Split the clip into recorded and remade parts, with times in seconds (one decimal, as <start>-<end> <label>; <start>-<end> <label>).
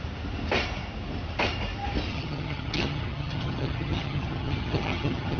0.0-2.1 recorded; 2.1-5.4 remade